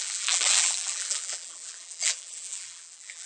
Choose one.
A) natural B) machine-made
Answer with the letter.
B